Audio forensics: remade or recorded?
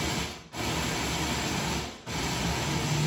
recorded